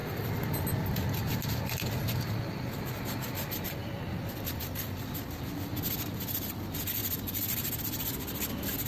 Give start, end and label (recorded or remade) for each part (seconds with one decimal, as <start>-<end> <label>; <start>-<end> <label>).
0.0-8.9 recorded